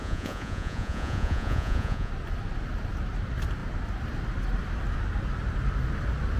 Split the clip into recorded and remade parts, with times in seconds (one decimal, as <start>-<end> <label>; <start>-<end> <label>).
0.0-2.1 remade; 2.1-6.4 recorded